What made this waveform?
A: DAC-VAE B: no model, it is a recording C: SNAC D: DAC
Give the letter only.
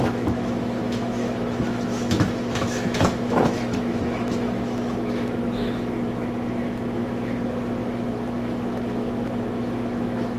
A